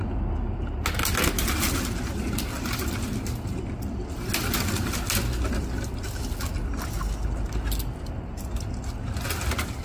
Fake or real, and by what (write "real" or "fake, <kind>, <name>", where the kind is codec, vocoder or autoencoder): real